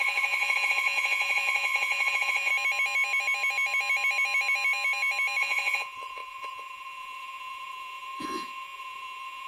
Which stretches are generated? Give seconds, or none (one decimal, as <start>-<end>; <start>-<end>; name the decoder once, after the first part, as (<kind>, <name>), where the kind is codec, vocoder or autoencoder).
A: 0.0-2.5 (vocoder, Vocos); 5.4-9.5